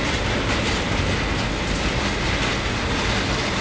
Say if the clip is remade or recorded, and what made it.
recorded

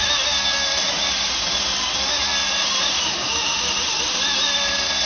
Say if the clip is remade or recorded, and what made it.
recorded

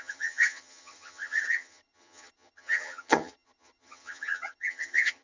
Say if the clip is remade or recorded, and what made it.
remade, vocoder, HiFi-GAN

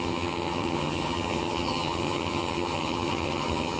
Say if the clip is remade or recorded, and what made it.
remade, vocoder, HiFi-GAN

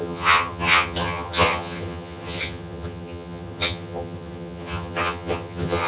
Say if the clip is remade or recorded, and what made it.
remade, vocoder, HiFi-GAN